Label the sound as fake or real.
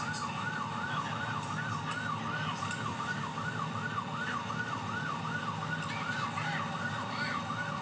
real